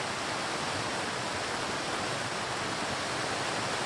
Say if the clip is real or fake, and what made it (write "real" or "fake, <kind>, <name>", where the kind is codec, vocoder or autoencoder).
real